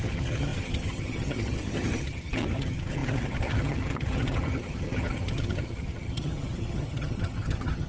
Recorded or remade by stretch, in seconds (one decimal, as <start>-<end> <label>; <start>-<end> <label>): 0.0-7.9 remade